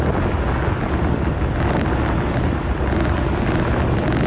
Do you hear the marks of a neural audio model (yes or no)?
no